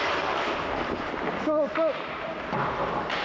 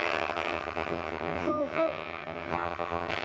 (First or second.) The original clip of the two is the first